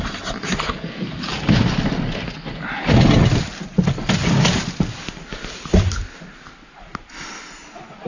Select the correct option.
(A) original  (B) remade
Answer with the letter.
A